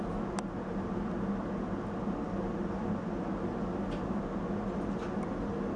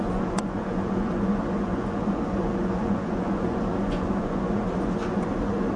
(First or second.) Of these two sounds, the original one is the first